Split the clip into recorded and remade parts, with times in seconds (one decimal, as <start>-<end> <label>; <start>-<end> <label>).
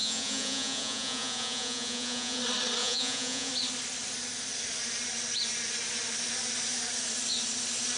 0.0-2.4 remade; 2.4-2.8 recorded; 2.8-3.5 remade; 3.5-8.0 recorded